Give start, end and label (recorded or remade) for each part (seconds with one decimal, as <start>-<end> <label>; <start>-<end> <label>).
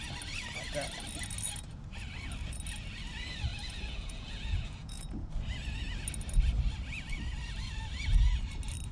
0.0-3.5 recorded; 3.5-5.3 remade; 5.3-8.9 recorded